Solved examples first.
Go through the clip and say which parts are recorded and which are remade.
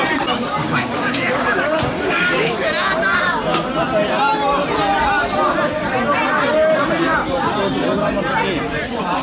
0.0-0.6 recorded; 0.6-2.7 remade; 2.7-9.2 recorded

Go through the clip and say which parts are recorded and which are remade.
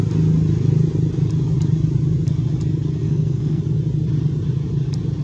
0.0-3.0 recorded; 3.0-3.6 remade; 3.6-5.2 recorded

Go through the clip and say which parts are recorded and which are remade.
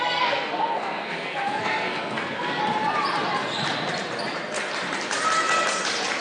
0.0-2.6 remade; 2.6-6.2 recorded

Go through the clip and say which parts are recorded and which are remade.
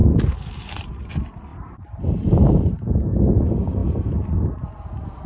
0.0-0.9 remade; 0.9-1.5 recorded; 1.5-2.3 remade; 2.3-5.3 recorded